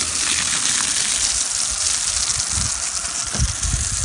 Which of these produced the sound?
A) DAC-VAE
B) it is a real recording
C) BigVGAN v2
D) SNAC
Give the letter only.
B